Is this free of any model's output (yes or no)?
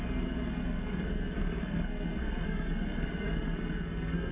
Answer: no